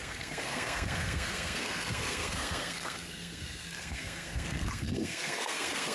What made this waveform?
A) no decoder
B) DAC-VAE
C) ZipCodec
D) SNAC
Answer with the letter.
D